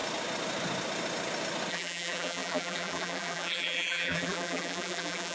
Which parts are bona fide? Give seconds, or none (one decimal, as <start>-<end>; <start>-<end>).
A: 0.0-1.7